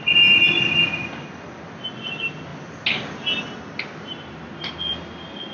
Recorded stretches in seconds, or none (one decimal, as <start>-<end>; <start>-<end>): 0.0-5.5